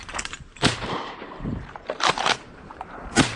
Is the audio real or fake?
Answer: fake